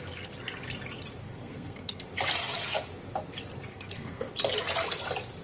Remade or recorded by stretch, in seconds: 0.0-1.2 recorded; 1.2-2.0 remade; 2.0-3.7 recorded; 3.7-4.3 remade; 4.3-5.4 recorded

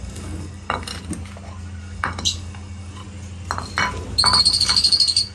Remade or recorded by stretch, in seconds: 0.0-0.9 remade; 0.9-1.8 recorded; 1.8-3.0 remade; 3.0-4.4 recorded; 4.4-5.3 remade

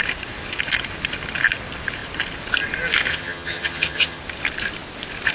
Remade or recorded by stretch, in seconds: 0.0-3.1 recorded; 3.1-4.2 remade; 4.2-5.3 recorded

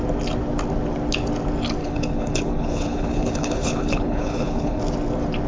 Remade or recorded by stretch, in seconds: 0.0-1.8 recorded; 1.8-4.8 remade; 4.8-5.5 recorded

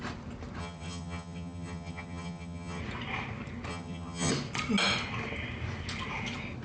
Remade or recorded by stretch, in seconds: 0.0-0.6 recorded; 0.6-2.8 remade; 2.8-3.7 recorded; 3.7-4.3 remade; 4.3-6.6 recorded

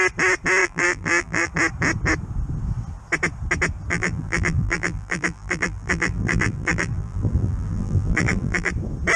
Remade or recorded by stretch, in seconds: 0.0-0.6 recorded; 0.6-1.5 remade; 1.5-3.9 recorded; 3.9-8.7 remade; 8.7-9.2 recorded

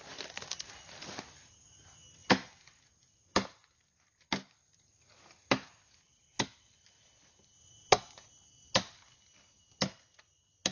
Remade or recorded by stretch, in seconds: 0.0-10.7 recorded